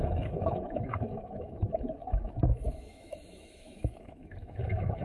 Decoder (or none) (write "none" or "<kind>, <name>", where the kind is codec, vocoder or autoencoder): autoencoder, DAC-VAE